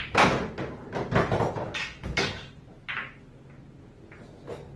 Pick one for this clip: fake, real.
real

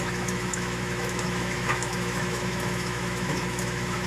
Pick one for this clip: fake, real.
fake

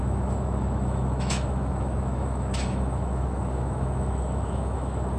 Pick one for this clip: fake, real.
fake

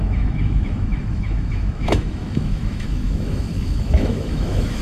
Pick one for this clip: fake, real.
fake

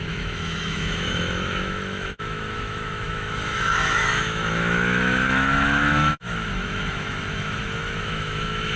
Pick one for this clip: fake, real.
fake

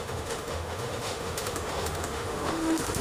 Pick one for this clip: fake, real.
fake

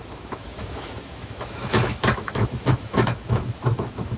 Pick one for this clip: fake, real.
fake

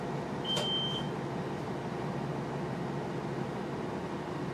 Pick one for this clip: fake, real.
real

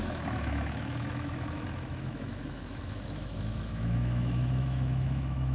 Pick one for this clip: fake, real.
fake